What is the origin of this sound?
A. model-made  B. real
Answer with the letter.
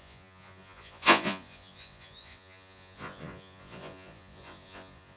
A